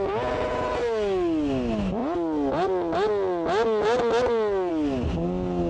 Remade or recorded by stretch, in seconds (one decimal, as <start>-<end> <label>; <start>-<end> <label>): 0.0-5.7 recorded